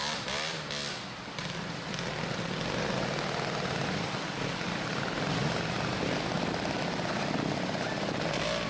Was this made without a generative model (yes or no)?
yes